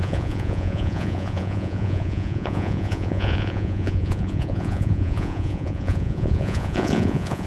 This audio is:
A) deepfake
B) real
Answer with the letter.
A